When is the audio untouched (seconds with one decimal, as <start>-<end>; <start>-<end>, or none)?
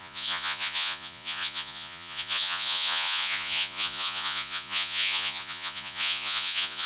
none